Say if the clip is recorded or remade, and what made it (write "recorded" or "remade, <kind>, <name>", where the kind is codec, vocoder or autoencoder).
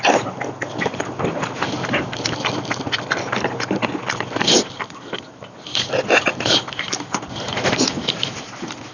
recorded